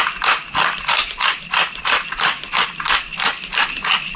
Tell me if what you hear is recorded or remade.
recorded